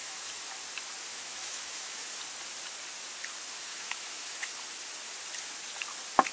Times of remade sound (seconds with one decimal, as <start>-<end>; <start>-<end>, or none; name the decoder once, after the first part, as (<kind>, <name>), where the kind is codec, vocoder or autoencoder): 0.0-0.5 (autoencoder, DAC-VAE); 1.1-2.2; 3.7-4.5